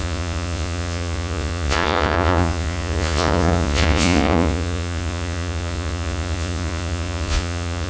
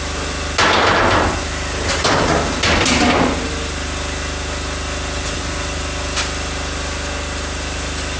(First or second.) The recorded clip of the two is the second